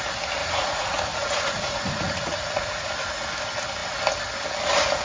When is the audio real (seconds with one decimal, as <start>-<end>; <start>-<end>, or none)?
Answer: 0.0-0.4; 2.9-5.0